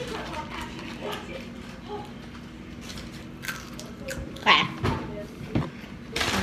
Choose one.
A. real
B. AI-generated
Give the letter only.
A